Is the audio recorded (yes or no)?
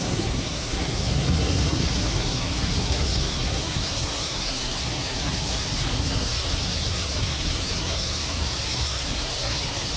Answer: no